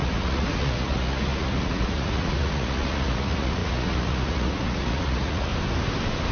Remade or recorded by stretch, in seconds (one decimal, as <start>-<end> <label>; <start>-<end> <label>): 0.0-5.5 remade; 5.5-6.3 recorded